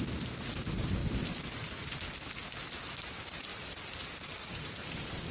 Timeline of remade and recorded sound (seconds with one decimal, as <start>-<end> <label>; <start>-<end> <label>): 0.0-3.5 recorded; 3.5-5.3 remade